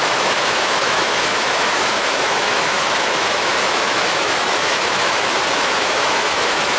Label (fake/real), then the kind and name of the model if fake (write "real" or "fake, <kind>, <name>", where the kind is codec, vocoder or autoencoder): fake, autoencoder, DAC-VAE